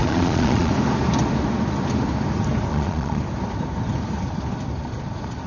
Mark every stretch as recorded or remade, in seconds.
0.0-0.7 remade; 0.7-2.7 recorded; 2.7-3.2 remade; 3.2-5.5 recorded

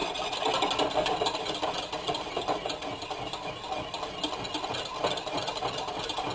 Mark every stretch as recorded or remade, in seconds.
0.0-6.3 recorded

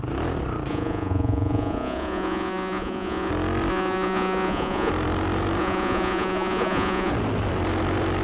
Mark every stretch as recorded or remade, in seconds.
0.0-0.7 recorded; 0.7-3.3 remade; 3.3-3.7 recorded; 3.7-4.9 remade; 4.9-5.6 recorded; 5.6-7.1 remade; 7.1-8.2 recorded

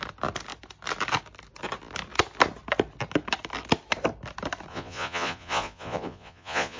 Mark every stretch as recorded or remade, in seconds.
0.0-4.7 recorded; 4.7-6.8 remade

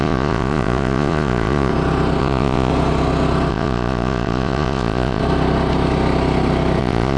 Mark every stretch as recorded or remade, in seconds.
0.0-1.7 remade; 1.7-2.2 recorded; 2.2-2.7 remade; 2.7-3.5 recorded; 3.5-5.2 remade; 5.2-6.8 recorded; 6.8-7.2 remade